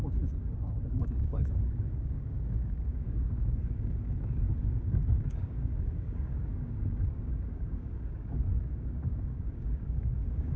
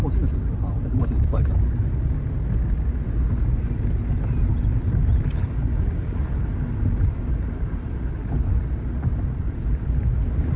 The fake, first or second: first